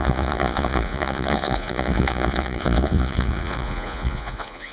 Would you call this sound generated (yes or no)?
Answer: yes